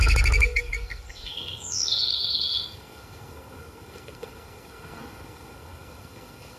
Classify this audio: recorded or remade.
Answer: remade